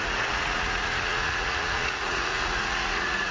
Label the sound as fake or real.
fake